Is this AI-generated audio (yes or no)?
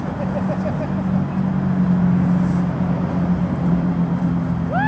no